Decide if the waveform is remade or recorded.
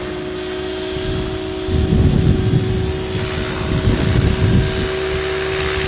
recorded